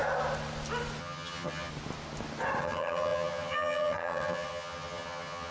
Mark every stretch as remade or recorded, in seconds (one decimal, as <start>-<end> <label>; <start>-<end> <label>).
0.0-1.0 recorded; 1.0-1.7 remade; 1.7-2.6 recorded; 2.6-5.5 remade